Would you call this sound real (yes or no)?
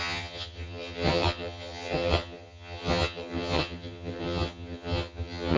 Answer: no